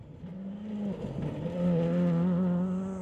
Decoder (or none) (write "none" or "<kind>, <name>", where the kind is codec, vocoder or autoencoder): none